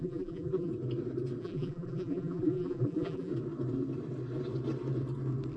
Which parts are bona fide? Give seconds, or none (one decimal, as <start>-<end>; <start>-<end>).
0.7-1.4; 3.3-5.6